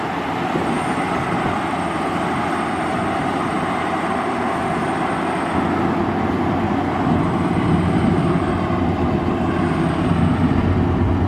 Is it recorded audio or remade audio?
recorded